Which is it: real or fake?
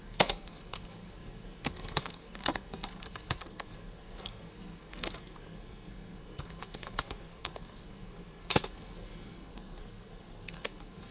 fake